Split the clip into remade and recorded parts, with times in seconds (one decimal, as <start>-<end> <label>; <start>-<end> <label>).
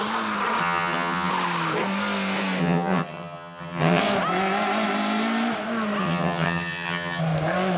0.0-0.6 recorded; 0.6-1.3 remade; 1.3-2.6 recorded; 2.6-4.0 remade; 4.0-6.0 recorded; 6.0-7.2 remade; 7.2-7.8 recorded